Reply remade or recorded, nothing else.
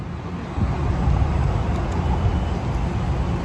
recorded